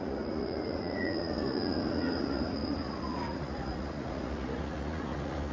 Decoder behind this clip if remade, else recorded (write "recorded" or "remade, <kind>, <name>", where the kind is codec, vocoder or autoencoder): remade, vocoder, Vocos